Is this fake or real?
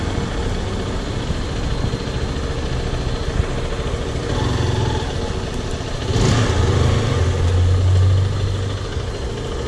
real